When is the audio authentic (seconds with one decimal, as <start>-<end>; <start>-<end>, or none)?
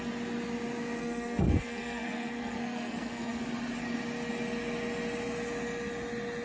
0.0-1.0; 3.4-6.4